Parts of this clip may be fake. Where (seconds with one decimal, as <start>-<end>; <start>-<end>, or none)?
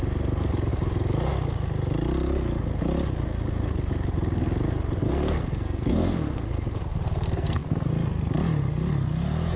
5.0-7.9